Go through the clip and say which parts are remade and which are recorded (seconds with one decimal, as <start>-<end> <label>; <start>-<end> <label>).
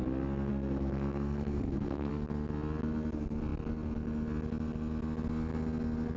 0.0-0.5 recorded; 0.5-2.1 remade; 2.1-6.2 recorded